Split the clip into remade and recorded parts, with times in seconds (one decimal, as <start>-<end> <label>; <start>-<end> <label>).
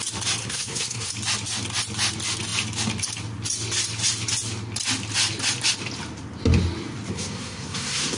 0.0-0.4 recorded; 0.4-1.1 remade; 1.1-7.1 recorded; 7.1-8.2 remade